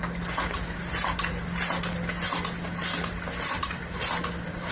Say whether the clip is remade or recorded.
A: recorded